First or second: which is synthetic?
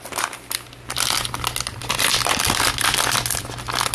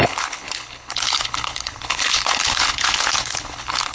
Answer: second